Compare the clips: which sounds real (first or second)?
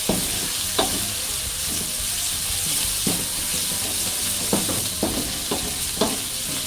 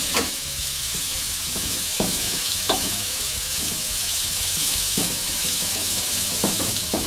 first